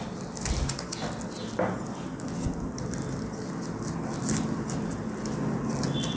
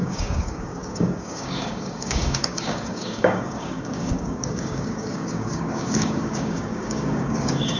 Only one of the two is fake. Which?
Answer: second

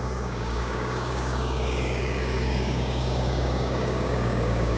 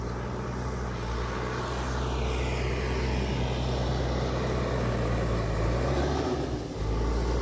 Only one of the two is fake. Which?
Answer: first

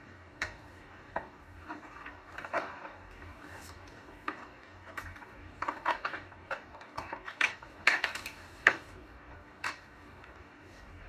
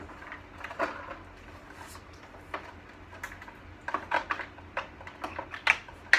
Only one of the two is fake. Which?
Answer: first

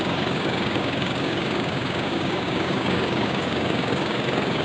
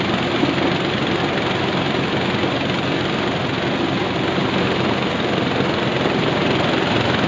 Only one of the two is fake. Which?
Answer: first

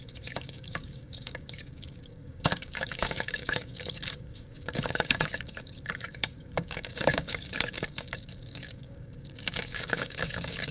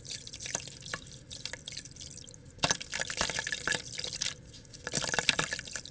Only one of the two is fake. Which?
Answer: first